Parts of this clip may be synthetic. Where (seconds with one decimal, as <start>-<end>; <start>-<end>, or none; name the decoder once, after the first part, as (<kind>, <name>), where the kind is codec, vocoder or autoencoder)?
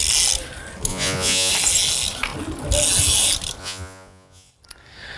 0.9-1.5 (vocoder, Vocos); 3.6-4.5